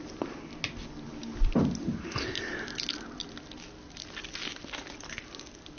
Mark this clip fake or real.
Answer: real